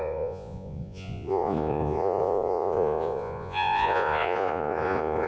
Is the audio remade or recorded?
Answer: remade